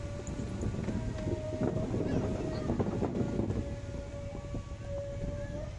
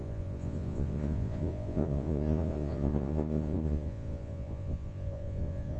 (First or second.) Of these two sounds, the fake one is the second